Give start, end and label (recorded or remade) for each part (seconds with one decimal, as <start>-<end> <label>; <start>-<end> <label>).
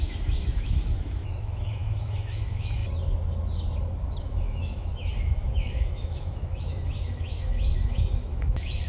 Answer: 0.0-2.8 remade; 2.8-4.2 recorded; 4.2-8.9 remade